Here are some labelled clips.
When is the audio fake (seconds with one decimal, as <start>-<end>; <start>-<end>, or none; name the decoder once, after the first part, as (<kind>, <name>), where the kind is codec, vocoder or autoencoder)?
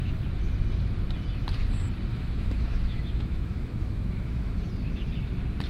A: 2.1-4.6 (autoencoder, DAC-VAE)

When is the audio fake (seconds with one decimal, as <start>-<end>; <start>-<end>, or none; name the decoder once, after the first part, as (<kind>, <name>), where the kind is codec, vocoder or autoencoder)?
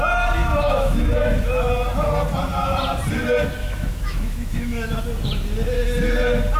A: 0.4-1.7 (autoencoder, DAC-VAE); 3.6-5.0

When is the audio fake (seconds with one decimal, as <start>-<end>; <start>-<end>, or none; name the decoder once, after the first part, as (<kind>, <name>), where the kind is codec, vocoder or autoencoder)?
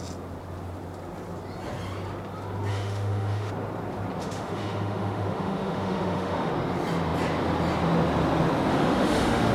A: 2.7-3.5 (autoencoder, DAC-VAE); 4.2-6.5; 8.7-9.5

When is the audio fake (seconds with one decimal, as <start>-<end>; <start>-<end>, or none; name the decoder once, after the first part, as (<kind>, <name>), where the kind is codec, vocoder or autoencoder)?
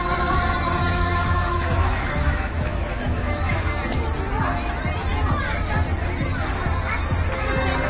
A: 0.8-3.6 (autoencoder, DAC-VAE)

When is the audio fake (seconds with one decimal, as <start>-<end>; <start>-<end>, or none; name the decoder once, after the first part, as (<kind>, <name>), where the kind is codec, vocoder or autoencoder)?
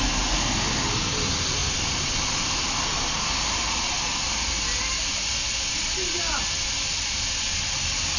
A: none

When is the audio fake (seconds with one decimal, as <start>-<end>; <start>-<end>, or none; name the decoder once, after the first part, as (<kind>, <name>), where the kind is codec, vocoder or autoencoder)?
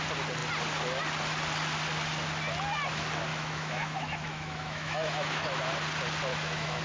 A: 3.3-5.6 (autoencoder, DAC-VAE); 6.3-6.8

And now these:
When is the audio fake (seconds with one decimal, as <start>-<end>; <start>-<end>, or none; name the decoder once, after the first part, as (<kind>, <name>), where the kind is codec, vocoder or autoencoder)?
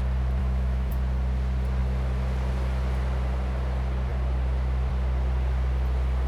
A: 0.4-0.9 (autoencoder, DAC-VAE)